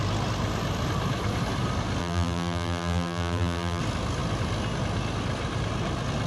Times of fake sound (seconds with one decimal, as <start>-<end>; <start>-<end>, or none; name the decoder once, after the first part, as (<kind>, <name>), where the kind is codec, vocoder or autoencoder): 2.0-3.8 (vocoder, BigVGAN v2)

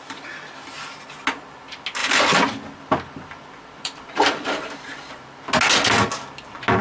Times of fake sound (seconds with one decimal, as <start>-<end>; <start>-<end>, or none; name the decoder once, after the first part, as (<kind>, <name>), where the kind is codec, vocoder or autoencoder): 2.0-5.1 (vocoder, BigVGAN v2)

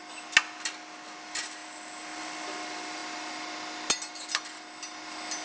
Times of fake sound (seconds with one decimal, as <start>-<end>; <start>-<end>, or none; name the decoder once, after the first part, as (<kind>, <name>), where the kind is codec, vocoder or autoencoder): none